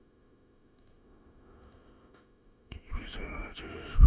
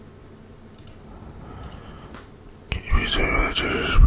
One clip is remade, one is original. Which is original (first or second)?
second